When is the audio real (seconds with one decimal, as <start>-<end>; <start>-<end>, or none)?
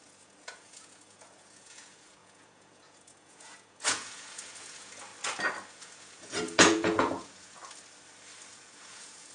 5.1-5.7; 7.6-8.5